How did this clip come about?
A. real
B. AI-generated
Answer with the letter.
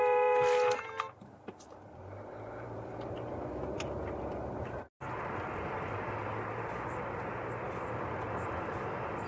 B